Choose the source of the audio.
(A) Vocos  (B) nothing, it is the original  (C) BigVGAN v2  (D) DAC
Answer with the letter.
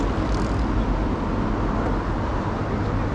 B